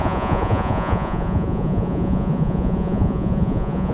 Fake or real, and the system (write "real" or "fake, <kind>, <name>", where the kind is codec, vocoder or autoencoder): fake, vocoder, Vocos